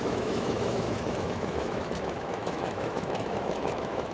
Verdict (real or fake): fake